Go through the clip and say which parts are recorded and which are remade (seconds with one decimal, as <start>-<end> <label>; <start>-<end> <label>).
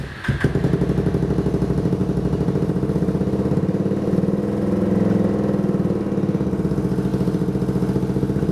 0.0-8.5 recorded